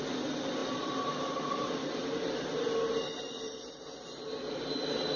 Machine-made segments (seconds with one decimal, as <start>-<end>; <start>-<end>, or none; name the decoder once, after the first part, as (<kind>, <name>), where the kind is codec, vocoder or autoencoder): none